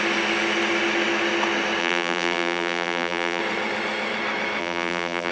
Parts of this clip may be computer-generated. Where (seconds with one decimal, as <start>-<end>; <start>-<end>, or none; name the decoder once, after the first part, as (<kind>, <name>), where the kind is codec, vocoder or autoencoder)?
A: 1.8-3.4 (vocoder, BigVGAN v2); 4.6-5.3